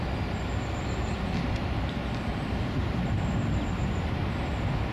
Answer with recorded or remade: recorded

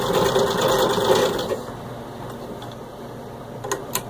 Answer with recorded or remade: recorded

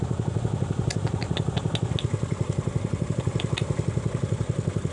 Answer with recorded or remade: recorded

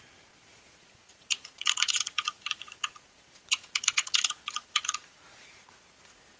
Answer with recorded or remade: remade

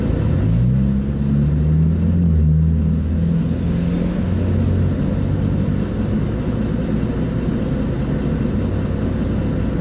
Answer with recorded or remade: recorded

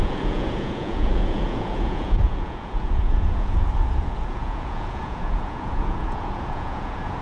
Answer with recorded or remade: remade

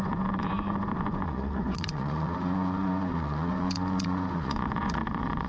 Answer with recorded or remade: remade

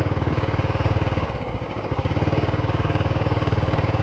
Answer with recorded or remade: remade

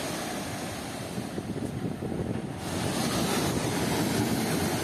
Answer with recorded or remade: recorded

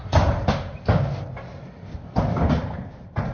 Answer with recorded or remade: recorded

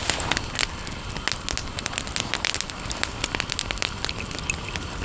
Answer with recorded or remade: recorded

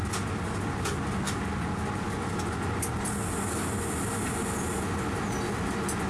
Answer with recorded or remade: recorded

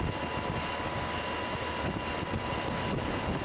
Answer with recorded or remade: recorded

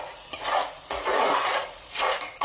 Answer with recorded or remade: remade